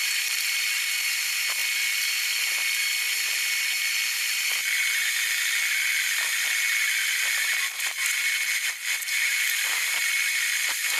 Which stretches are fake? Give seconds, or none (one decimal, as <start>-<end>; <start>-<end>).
none